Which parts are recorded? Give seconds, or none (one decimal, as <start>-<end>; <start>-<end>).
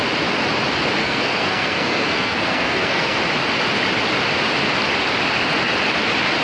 0.0-1.0; 3.2-6.4